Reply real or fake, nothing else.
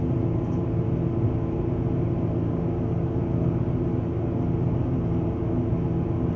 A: real